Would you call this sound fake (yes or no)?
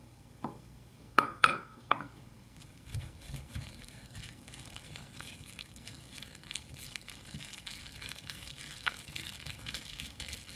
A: yes